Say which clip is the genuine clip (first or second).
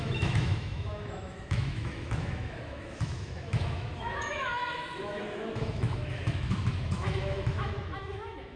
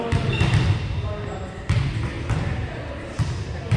second